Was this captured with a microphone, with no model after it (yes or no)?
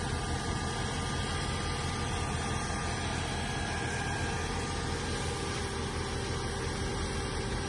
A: yes